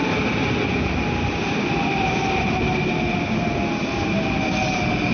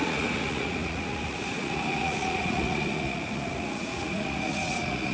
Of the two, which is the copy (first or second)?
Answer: second